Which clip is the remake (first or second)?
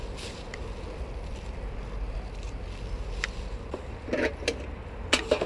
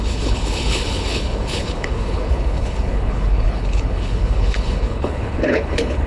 second